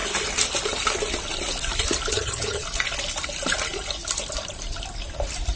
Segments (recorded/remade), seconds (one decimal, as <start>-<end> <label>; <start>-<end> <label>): 0.0-2.1 recorded; 2.1-2.6 remade; 2.6-5.5 recorded